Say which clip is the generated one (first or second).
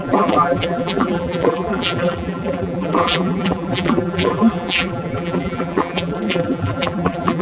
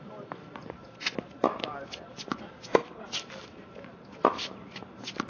first